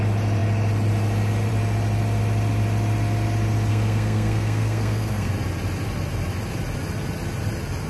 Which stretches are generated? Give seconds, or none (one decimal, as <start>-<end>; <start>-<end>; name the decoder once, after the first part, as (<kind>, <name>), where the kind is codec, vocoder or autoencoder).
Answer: 3.7-5.3 (codec, SNAC)